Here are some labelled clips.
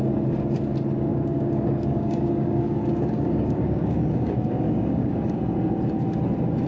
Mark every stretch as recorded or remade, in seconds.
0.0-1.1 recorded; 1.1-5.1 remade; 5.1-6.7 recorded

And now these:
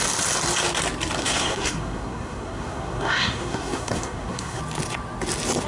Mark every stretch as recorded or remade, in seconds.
0.0-1.2 recorded; 1.2-4.6 remade; 4.6-5.7 recorded